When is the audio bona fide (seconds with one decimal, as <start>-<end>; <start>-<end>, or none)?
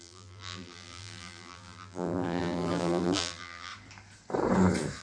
3.7-5.0